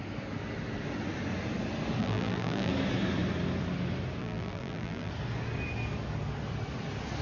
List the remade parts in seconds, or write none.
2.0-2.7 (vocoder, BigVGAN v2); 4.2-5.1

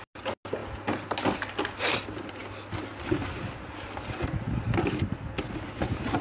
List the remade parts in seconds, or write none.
none

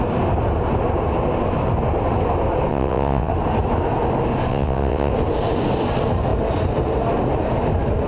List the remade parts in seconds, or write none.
2.7-3.3 (vocoder, WaveNeXt); 4.5-5.1

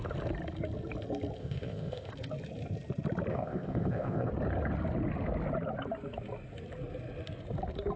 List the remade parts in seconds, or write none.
1.4-2.1 (codec, ZipCodec); 3.3-4.3

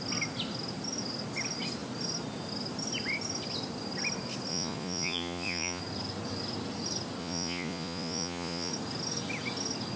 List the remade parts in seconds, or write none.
4.5-5.8 (vocoder, Vocos); 7.2-8.7

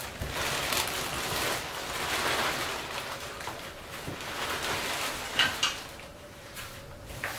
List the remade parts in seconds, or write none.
6.1-6.9 (vocoder, BigVGAN v2)

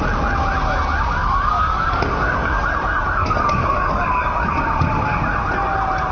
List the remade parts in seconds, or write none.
1.2-2.6 (codec, DAC); 3.2-4.1